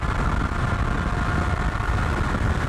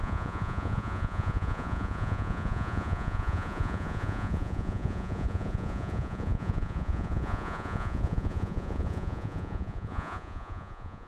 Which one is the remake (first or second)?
second